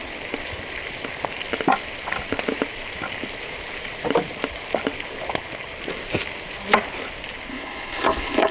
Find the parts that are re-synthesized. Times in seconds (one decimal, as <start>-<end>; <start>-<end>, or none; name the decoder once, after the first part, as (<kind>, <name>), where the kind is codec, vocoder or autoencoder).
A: 7.5-8.5 (codec, HILCodec)